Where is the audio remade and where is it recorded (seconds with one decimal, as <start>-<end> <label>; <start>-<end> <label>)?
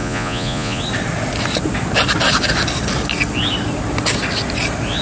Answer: 0.0-0.8 remade; 0.8-5.0 recorded